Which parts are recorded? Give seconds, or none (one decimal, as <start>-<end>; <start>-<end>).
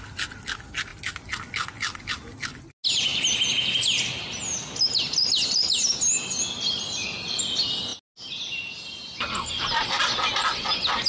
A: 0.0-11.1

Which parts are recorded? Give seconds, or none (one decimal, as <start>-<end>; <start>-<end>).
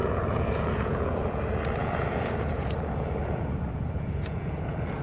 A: 1.4-1.8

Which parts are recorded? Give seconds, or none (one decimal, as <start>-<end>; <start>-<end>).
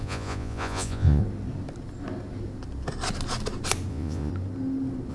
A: 1.2-3.9; 4.3-5.1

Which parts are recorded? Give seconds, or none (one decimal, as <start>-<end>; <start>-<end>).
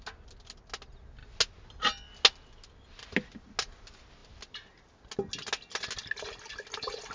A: 0.0-7.1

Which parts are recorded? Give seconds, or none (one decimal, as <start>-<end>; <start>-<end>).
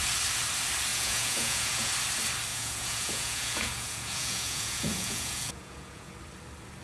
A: 0.0-0.9; 1.9-2.5; 6.1-6.8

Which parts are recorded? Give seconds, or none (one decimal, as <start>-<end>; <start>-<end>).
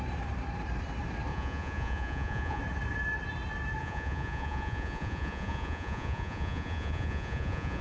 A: 0.0-1.3; 2.6-3.8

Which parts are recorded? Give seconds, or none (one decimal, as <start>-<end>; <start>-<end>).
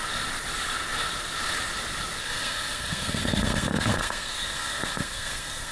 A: 0.0-2.2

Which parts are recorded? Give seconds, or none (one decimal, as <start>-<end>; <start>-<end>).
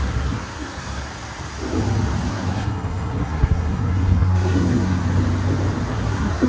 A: 1.1-2.3; 5.0-5.9